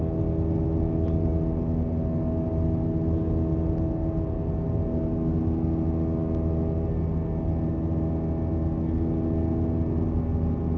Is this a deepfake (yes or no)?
no